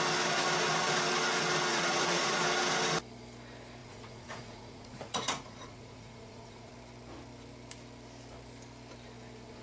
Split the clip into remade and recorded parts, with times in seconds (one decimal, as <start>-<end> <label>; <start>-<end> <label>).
0.0-1.7 recorded; 1.7-2.4 remade; 2.4-3.8 recorded; 3.8-6.7 remade; 6.7-9.6 recorded